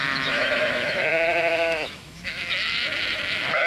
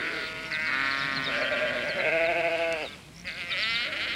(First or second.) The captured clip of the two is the second